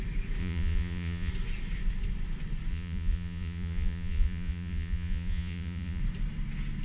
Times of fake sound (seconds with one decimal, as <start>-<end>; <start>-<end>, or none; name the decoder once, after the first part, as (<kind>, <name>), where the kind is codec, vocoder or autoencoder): 0.4-1.3 (vocoder, Vocos); 2.7-6.0